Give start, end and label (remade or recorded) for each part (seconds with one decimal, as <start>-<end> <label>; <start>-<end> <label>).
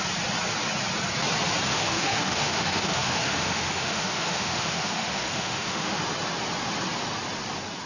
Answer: 0.0-1.7 recorded; 1.7-6.0 remade; 6.0-7.9 recorded